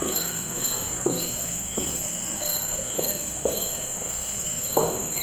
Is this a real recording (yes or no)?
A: no